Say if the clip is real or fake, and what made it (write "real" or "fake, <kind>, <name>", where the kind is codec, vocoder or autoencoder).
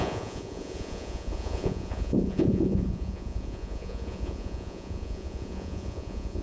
fake, vocoder, Vocos